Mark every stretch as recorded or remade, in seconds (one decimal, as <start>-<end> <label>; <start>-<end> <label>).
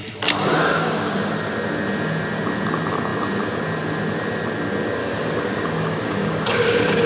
0.0-0.5 recorded; 0.5-1.3 remade; 1.3-5.0 recorded; 5.0-7.1 remade